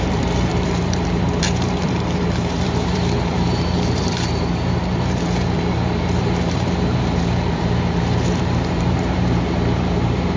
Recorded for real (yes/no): no